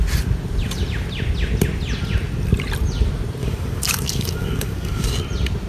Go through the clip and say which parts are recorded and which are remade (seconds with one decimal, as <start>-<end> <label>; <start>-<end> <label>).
0.0-3.4 recorded; 3.4-5.1 remade; 5.1-5.7 recorded